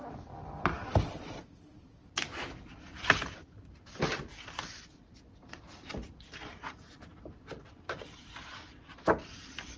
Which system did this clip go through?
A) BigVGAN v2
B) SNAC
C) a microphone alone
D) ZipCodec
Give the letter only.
C